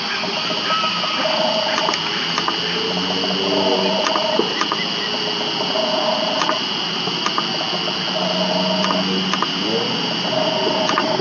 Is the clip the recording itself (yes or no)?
yes